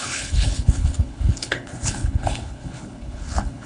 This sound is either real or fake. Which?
fake